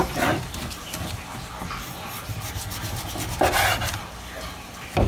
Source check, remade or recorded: recorded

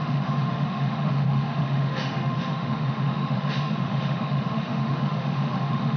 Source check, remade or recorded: remade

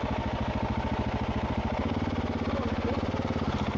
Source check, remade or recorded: recorded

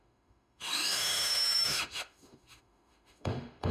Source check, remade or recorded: remade